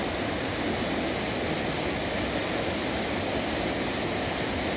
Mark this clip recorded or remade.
recorded